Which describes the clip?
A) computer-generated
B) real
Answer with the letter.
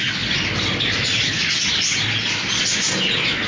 B